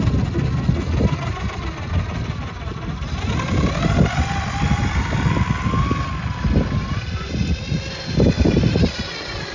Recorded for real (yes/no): yes